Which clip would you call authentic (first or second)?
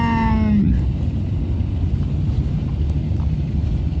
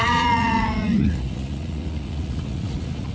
first